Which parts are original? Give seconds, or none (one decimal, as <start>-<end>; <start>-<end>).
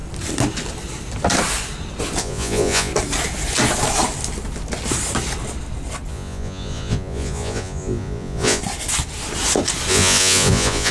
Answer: 0.0-2.2; 2.9-6.1; 8.6-9.9